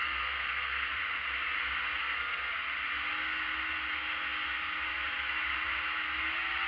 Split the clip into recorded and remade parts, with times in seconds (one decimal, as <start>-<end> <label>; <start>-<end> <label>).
0.0-0.9 remade; 0.9-2.0 recorded; 2.0-2.5 remade; 2.5-6.7 recorded